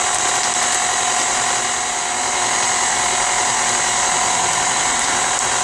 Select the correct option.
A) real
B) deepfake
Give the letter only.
A